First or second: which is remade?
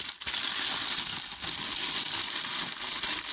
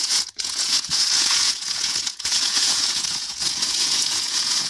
second